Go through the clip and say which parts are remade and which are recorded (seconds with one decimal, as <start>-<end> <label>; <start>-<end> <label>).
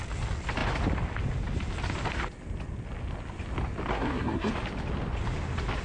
0.0-3.9 recorded; 3.9-4.5 remade; 4.5-5.8 recorded